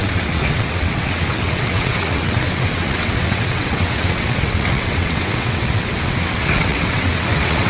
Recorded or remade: remade